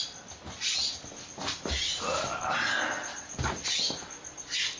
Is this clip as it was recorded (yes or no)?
yes